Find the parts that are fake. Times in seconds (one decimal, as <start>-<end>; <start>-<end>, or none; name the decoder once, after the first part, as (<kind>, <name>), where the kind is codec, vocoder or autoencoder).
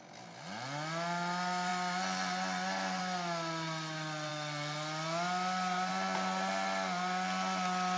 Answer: none